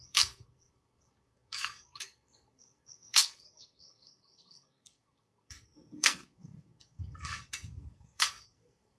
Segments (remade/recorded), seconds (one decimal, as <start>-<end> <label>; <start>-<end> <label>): 0.0-9.0 remade